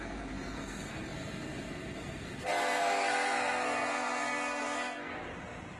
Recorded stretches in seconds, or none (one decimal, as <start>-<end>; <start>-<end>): 5.1-5.8